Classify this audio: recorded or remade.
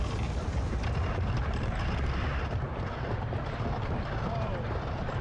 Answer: recorded